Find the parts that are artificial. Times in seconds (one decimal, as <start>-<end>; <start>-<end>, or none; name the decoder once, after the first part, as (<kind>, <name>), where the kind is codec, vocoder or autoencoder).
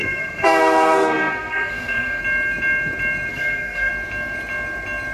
0.0-2.2 (codec, SNAC); 3.3-3.9